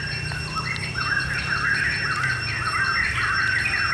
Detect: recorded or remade recorded